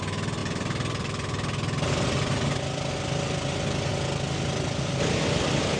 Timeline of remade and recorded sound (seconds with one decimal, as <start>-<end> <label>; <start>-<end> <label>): 0.0-5.8 recorded